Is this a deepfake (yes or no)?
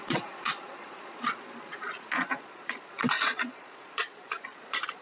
yes